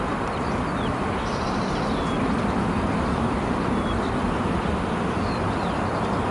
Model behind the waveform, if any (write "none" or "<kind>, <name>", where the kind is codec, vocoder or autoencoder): vocoder, BigVGAN v2